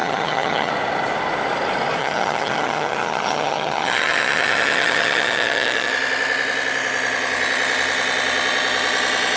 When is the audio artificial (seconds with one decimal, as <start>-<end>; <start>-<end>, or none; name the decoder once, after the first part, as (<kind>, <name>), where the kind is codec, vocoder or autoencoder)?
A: 0.0-0.7 (vocoder, HiFi-GAN); 2.0-5.9